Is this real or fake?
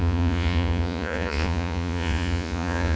fake